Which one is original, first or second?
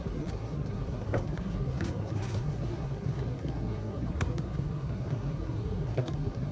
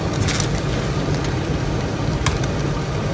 second